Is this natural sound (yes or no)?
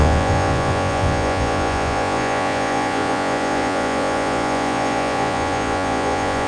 no